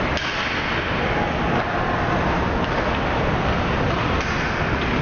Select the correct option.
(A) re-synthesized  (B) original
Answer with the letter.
B